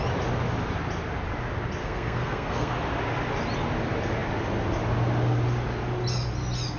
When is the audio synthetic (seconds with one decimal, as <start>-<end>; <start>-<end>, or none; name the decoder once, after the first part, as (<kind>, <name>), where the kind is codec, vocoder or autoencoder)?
1.8-2.7 (codec, SNAC)